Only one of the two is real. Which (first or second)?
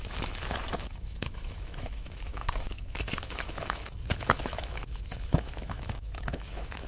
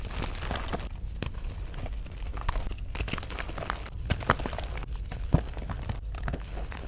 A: second